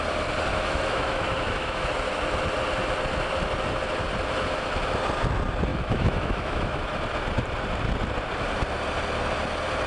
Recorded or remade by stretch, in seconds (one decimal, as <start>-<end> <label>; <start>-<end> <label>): 0.0-0.5 recorded; 0.5-1.9 remade; 1.9-5.7 recorded; 5.7-6.8 remade; 6.8-9.9 recorded